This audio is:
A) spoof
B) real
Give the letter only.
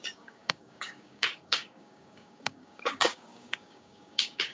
A